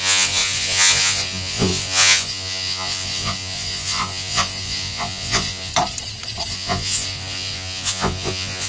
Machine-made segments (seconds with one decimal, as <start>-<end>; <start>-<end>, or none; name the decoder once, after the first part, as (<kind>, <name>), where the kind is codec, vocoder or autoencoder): 0.0-5.7 (vocoder, Vocos); 6.5-8.7